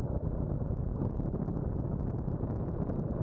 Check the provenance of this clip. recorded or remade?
recorded